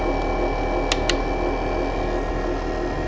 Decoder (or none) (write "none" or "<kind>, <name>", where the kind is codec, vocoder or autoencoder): none